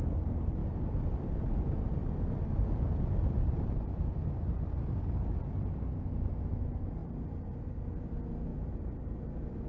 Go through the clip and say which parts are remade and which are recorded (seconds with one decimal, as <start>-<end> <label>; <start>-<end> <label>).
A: 0.0-2.0 recorded; 2.0-5.3 remade; 5.3-9.7 recorded